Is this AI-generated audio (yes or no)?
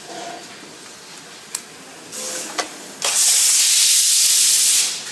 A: no